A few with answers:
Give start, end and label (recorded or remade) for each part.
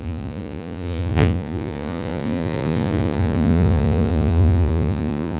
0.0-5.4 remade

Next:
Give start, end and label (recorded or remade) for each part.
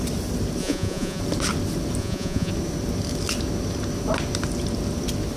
0.0-0.6 recorded; 0.6-1.2 remade; 1.2-2.0 recorded; 2.0-2.5 remade; 2.5-5.4 recorded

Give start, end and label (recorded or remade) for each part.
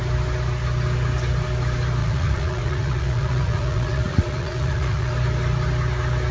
0.0-2.0 recorded; 2.0-5.1 remade; 5.1-6.3 recorded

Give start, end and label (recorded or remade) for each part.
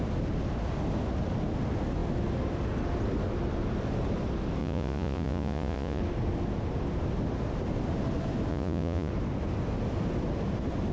0.0-4.6 recorded; 4.6-6.0 remade; 6.0-8.5 recorded; 8.5-9.1 remade; 9.1-10.9 recorded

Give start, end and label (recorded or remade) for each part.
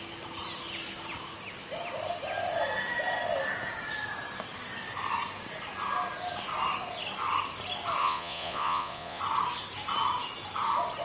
0.0-8.0 recorded; 8.0-9.2 remade; 9.2-11.0 recorded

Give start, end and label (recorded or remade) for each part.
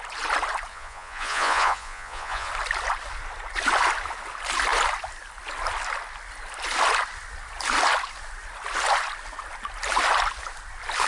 0.0-0.7 recorded; 0.7-2.5 remade; 2.5-11.1 recorded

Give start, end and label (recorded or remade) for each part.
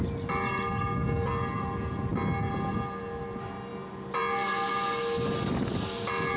0.0-6.4 recorded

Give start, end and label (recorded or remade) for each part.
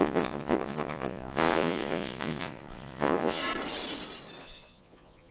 0.0-3.4 remade; 3.4-4.4 recorded; 4.4-5.3 remade